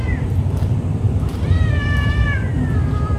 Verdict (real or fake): fake